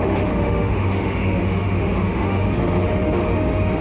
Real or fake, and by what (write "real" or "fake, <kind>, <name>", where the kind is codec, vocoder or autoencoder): fake, autoencoder, DAC-VAE